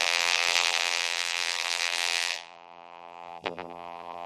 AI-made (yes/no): yes